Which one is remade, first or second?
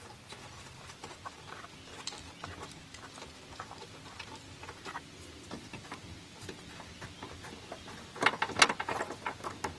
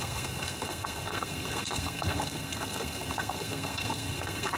second